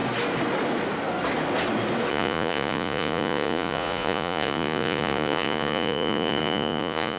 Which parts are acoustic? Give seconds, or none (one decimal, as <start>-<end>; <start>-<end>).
0.0-2.1